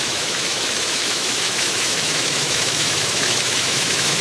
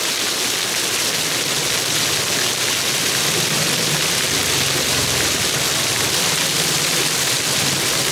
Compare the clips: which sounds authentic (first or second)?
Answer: second